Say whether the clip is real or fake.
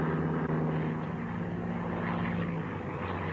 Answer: real